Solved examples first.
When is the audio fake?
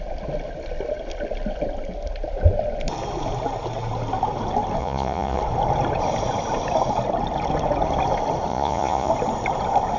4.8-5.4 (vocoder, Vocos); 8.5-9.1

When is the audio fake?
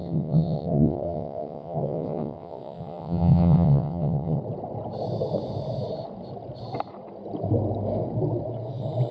0.0-4.4 (vocoder, WaveNeXt)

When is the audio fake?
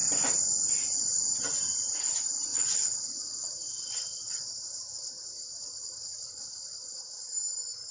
2.5-7.2 (vocoder, WaveNeXt)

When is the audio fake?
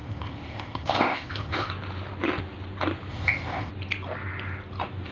0.0-1.7 (codec, ZipCodec); 3.1-3.7